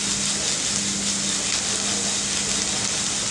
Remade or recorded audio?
recorded